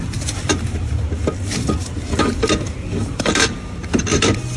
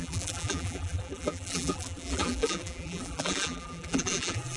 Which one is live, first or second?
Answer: first